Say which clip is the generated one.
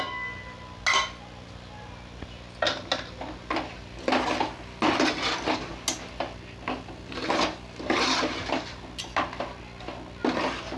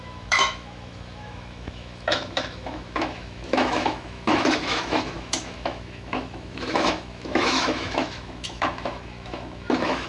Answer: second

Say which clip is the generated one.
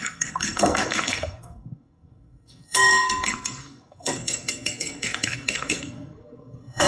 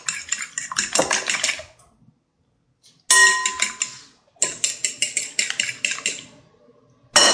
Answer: first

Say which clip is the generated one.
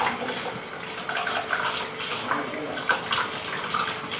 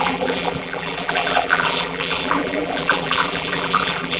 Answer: second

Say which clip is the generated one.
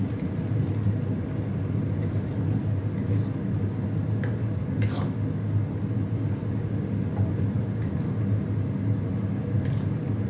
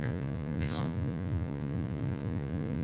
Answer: second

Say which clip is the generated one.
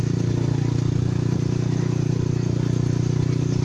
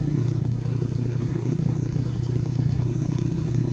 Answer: second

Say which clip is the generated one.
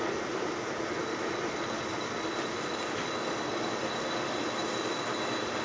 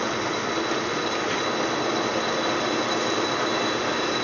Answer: first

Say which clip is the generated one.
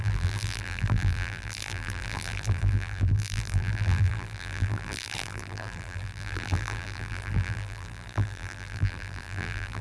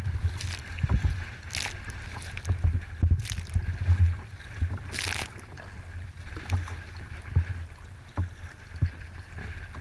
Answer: first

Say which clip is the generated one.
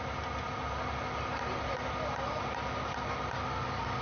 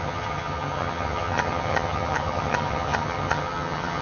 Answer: second